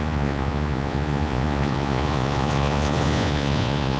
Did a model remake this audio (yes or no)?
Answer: yes